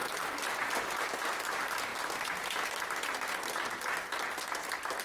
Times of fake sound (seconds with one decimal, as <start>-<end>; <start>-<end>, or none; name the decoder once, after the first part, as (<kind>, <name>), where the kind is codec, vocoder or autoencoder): 1.2-1.9 (vocoder, BigVGAN v2)